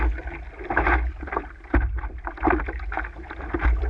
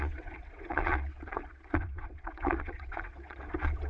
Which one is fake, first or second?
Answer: second